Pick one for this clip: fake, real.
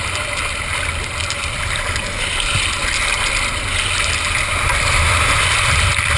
real